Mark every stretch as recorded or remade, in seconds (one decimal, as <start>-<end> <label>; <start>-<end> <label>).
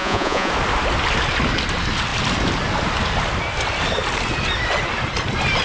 0.0-0.5 remade; 0.5-5.6 recorded